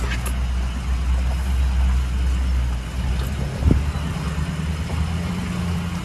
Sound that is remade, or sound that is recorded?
recorded